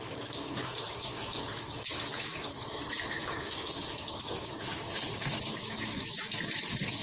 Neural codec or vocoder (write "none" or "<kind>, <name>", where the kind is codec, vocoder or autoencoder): autoencoder, DAC-VAE